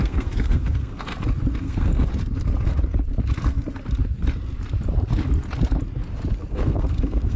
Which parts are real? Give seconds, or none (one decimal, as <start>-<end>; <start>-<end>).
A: 1.1-1.6; 2.1-6.5